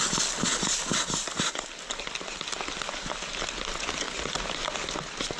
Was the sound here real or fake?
real